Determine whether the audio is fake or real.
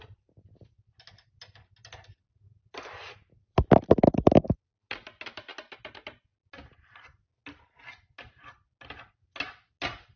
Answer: real